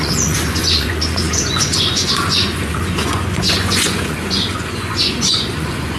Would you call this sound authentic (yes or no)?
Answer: no